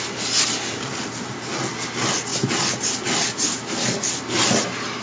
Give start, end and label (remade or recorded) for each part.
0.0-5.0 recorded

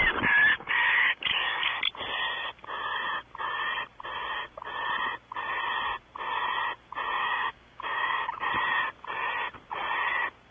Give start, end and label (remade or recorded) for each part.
0.0-0.5 recorded; 0.5-1.8 remade; 1.8-7.2 recorded; 7.2-8.5 remade; 8.5-10.5 recorded

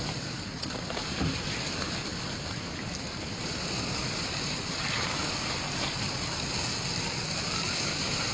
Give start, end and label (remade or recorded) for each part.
0.0-8.3 recorded

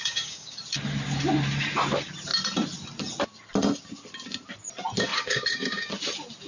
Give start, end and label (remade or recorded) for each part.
0.0-0.6 remade; 0.6-5.1 recorded; 5.1-5.9 remade; 5.9-6.5 recorded

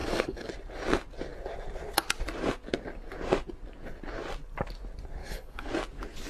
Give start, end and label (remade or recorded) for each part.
0.0-0.5 remade; 0.5-5.2 recorded; 5.2-5.7 remade; 5.7-6.3 recorded